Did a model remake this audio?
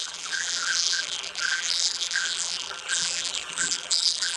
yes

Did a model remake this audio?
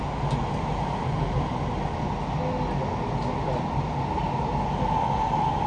no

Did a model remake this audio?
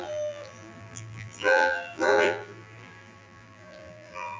yes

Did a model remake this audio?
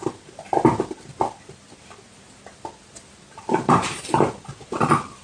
no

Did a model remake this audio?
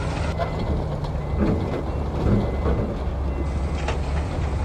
no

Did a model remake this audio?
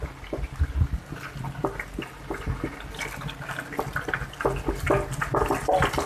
no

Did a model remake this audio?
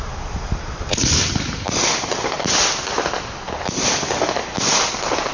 no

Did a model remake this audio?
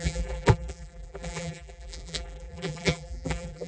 yes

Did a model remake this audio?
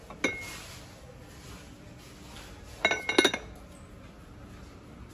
no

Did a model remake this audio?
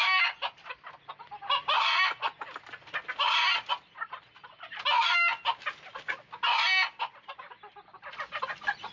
no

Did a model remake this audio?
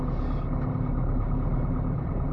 no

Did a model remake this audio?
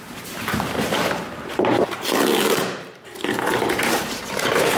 yes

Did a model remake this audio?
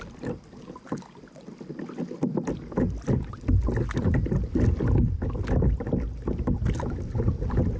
no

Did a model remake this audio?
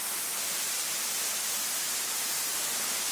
no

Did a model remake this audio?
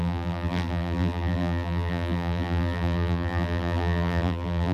yes